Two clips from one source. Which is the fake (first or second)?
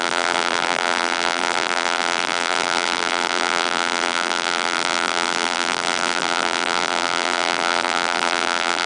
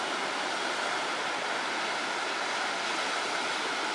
first